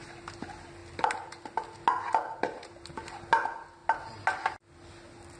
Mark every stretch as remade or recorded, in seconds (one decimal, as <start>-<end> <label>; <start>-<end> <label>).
0.0-5.4 recorded